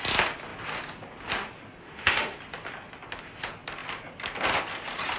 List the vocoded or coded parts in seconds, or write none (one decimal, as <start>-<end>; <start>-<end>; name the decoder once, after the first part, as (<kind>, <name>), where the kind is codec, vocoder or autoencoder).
1.8-2.4 (autoencoder, DAC-VAE)